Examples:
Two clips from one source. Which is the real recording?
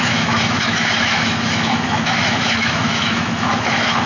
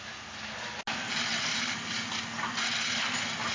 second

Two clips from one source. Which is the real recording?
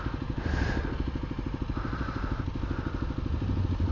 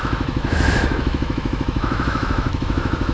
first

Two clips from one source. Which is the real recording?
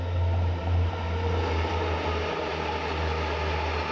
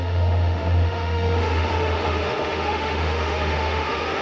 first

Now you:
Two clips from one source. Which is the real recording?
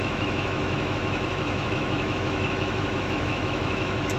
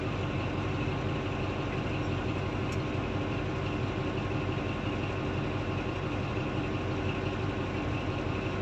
second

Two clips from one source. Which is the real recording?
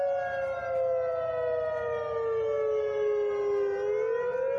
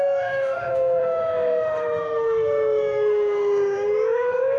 first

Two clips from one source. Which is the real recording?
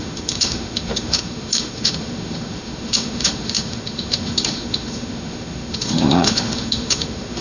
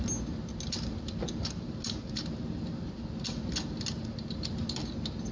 second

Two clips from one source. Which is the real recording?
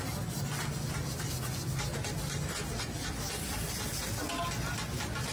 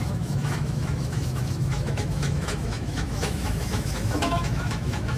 first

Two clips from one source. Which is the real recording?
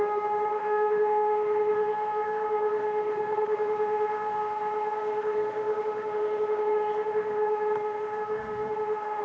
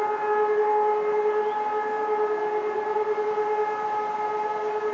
second